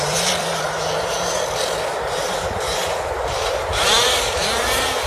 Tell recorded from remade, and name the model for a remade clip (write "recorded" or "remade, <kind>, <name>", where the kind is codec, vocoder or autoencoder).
remade, vocoder, BigVGAN v2